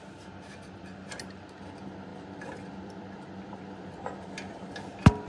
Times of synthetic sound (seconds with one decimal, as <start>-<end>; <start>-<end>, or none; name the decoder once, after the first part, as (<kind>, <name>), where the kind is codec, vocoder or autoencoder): 2.1-5.3 (vocoder, BigVGAN v2)